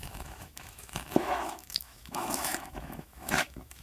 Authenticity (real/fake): fake